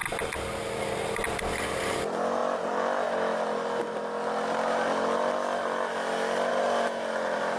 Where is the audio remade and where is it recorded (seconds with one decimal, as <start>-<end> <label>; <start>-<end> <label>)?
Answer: 0.0-7.6 recorded